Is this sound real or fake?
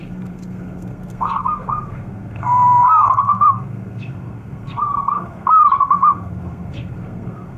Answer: fake